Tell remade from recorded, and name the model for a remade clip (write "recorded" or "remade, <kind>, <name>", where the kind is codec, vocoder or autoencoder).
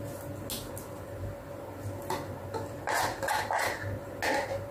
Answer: recorded